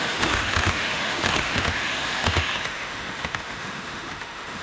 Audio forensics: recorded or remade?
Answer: remade